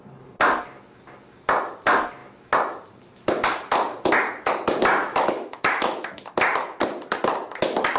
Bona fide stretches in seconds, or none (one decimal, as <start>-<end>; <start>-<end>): 0.0-5.0; 6.3-8.0